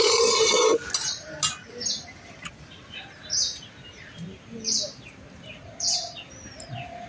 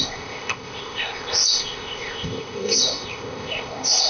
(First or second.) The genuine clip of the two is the first